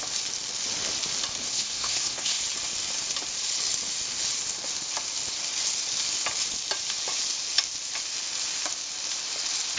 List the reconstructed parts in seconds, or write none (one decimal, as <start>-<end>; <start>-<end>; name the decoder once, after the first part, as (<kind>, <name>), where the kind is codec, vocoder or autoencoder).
1.4-2.4 (codec, SNAC)